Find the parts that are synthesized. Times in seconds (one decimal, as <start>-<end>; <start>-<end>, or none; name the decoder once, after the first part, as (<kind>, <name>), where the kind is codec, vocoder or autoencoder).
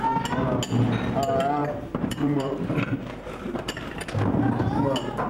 1.6-4.8 (vocoder, BigVGAN v2)